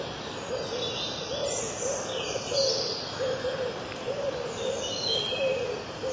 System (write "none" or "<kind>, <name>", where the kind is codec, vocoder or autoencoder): none